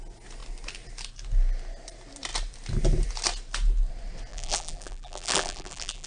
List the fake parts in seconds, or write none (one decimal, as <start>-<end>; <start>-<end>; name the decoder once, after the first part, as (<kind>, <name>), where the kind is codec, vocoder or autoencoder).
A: 4.3-6.1 (vocoder, BigVGAN v2)